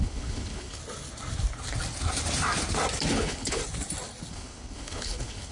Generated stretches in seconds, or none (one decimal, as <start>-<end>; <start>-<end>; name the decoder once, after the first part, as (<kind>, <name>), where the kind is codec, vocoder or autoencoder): 0.0-0.8 (codec, HILCodec); 3.1-3.6; 4.3-5.5